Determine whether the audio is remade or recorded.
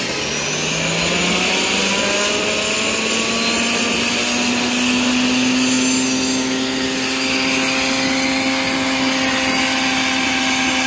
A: recorded